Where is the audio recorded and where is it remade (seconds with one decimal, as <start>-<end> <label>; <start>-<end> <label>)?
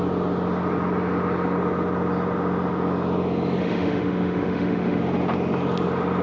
0.0-3.6 recorded; 3.6-5.0 remade; 5.0-6.2 recorded